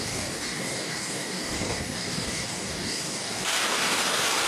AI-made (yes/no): yes